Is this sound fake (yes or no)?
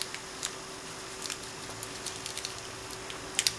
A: no